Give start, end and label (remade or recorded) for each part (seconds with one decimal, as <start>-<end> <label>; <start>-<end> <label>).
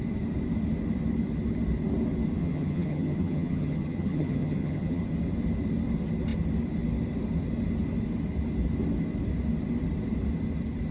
0.0-2.4 recorded; 2.4-5.0 remade; 5.0-10.9 recorded